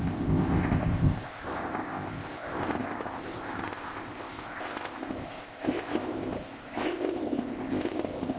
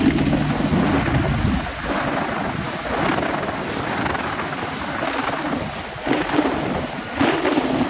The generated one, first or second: first